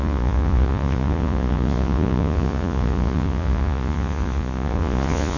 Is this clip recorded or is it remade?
remade